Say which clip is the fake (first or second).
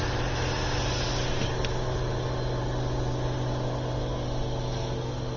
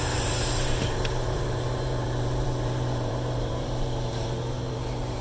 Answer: second